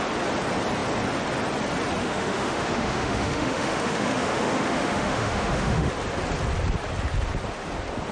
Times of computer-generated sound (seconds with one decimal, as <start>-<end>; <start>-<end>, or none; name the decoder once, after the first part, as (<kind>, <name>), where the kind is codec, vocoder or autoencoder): 2.0-5.9 (autoencoder, DAC-VAE)